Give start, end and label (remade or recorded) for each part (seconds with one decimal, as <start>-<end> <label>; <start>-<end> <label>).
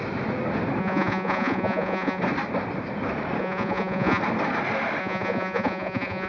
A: 0.0-0.8 recorded; 0.8-2.2 remade; 2.2-3.4 recorded; 3.4-4.2 remade; 4.2-5.0 recorded; 5.0-6.3 remade